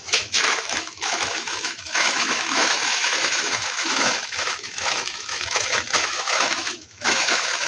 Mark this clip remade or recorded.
remade